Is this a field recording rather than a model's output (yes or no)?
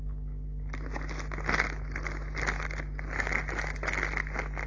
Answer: yes